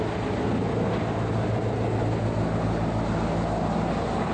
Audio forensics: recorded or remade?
recorded